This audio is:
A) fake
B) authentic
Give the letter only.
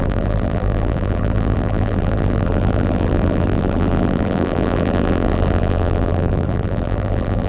A